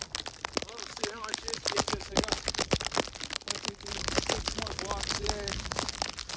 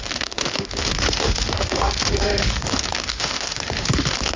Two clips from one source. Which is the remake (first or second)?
second